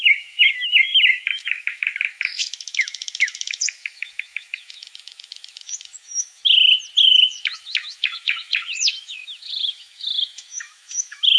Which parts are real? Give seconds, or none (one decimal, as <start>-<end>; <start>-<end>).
6.4-7.0